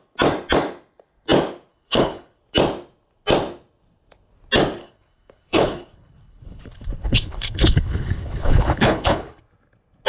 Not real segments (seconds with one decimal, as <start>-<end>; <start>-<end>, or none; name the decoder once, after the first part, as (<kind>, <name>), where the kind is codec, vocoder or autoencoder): 1.7-2.4 (codec, HILCodec); 4.8-9.4